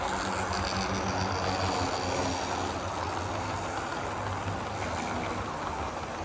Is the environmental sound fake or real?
real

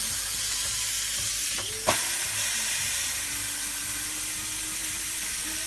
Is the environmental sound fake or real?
real